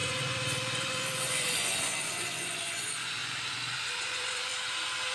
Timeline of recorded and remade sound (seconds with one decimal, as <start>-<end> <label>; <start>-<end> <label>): 0.0-4.5 remade; 4.5-5.1 recorded